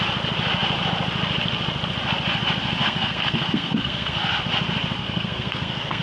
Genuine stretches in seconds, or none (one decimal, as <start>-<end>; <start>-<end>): 0.0-2.8; 4.4-5.0